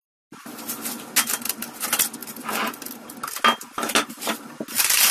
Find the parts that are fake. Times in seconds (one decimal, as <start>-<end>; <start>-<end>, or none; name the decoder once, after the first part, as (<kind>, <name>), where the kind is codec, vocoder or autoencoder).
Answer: none